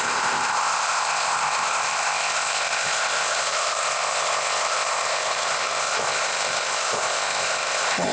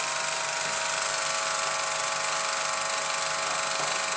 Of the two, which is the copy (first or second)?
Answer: first